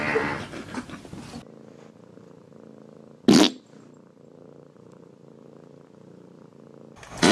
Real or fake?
real